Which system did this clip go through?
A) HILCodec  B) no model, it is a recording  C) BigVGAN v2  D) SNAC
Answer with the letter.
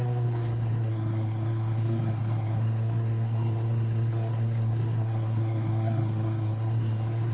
D